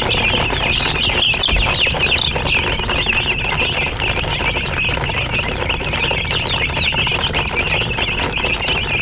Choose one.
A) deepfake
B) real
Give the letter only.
B